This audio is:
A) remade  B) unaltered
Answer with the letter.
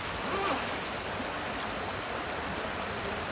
B